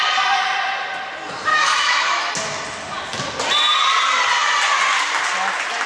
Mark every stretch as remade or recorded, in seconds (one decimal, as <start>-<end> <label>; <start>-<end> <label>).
0.0-1.5 recorded; 1.5-2.3 remade; 2.3-5.9 recorded